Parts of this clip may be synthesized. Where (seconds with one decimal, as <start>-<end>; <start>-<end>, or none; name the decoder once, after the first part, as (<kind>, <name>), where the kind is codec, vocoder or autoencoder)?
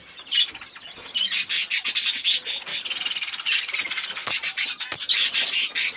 0.0-0.7 (vocoder, BigVGAN v2); 2.7-6.0